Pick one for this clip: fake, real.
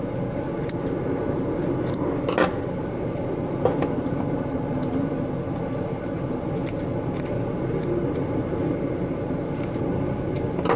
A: real